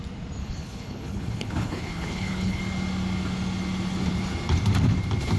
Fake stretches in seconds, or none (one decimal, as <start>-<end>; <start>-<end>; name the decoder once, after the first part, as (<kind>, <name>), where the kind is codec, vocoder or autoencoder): 0.4-2.6 (codec, HILCodec)